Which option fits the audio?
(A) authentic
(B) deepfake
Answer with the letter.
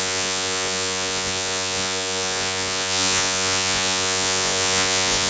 B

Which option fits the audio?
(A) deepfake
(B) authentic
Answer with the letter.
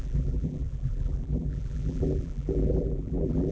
A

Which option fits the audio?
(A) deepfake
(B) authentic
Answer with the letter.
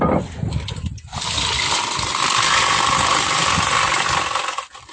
B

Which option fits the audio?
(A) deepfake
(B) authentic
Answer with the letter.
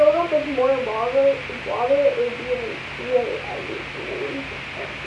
B